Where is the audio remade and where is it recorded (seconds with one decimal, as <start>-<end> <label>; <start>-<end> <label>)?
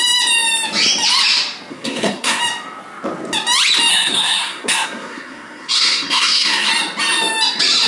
0.0-1.7 recorded; 1.7-2.4 remade; 2.4-3.9 recorded; 3.9-6.7 remade; 6.7-7.9 recorded